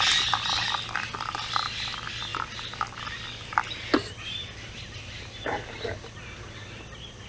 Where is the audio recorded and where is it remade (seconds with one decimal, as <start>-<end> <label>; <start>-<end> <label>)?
0.0-7.3 recorded